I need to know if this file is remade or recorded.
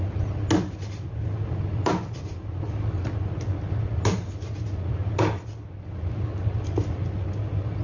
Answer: recorded